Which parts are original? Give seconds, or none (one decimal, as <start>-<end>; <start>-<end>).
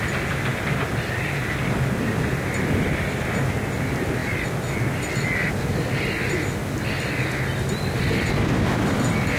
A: 0.0-0.5; 3.3-9.4